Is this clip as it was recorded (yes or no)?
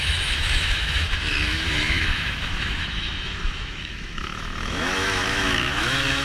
no